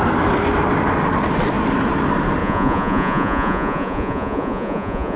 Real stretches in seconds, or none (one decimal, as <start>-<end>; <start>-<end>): 0.0-2.4